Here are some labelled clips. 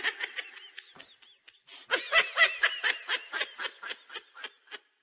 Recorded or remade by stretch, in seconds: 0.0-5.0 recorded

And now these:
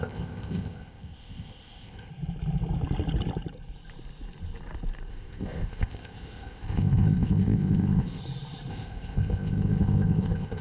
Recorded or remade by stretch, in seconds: 0.0-2.1 remade; 2.1-5.1 recorded; 5.1-8.2 remade; 8.2-8.7 recorded; 8.7-10.6 remade